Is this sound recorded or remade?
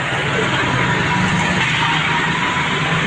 recorded